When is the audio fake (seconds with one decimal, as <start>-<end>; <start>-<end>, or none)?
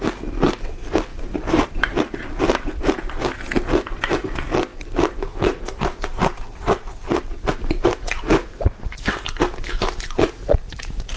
1.1-3.1